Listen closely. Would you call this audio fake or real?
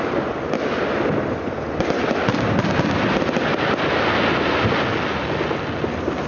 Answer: real